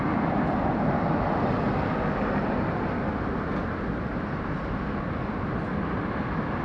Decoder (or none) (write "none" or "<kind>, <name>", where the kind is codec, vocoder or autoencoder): none